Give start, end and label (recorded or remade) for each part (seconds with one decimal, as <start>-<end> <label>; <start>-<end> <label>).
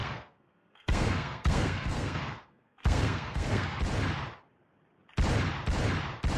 0.0-3.8 remade; 3.8-6.4 recorded